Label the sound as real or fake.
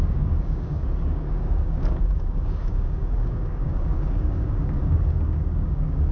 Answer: fake